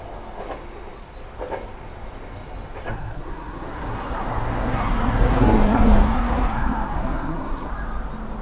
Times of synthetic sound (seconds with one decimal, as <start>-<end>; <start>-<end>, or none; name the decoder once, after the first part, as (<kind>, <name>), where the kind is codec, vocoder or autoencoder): 2.9-7.7 (codec, SNAC)